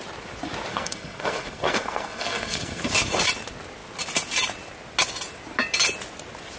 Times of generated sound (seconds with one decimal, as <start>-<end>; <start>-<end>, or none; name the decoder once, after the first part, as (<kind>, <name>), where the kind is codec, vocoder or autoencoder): 0.7-2.9 (codec, SNAC)